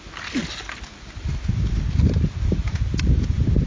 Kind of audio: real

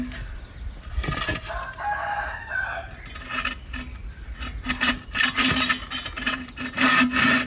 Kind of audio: real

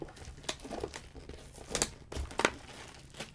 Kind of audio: real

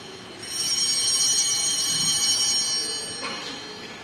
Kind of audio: real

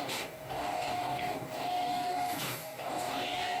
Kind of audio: fake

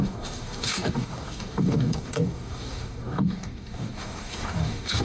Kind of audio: fake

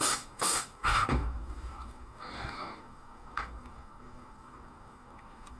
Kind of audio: fake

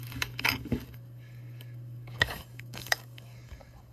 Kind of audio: fake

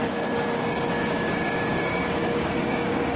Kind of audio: fake